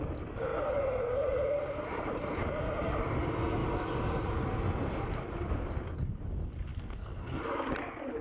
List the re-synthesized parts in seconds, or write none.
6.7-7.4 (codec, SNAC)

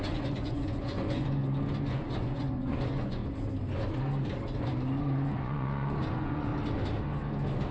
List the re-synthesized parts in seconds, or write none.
0.0-1.4 (vocoder, Vocos); 1.9-3.2; 5.0-6.5